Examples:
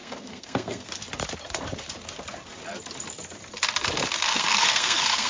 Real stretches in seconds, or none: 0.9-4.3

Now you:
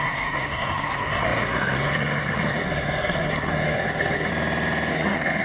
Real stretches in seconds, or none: 4.3-4.9